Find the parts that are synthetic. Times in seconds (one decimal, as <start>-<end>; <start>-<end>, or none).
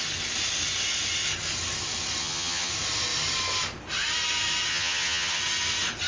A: 2.2-2.7; 4.7-5.4